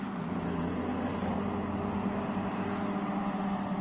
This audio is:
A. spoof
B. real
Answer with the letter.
B